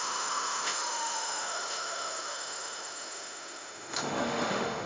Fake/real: fake